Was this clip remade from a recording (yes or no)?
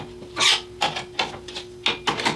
no